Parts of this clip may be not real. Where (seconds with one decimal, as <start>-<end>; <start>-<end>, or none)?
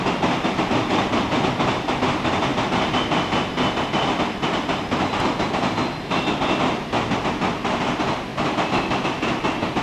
none